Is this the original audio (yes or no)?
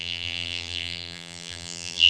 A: no